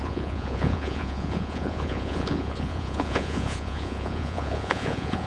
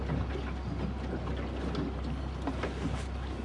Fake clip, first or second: first